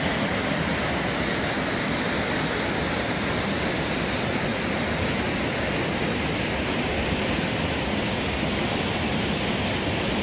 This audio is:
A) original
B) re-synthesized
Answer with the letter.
A